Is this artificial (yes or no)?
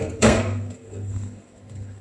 yes